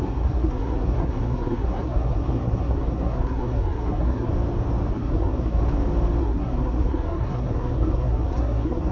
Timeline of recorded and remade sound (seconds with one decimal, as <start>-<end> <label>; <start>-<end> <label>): 0.0-4.3 remade; 4.3-4.9 recorded; 4.9-5.6 remade; 5.6-6.2 recorded; 6.2-8.9 remade